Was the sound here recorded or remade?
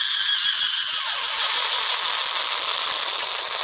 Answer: recorded